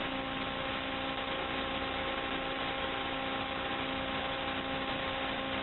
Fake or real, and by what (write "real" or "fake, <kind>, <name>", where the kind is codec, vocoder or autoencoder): real